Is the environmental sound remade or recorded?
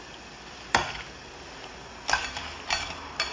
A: recorded